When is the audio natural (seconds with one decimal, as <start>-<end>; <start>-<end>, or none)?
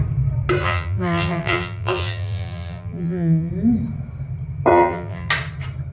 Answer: 0.0-0.6; 3.5-4.7; 5.3-5.9